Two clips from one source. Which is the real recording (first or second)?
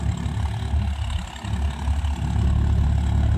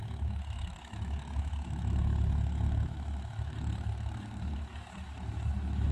first